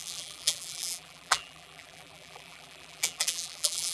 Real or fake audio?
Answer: fake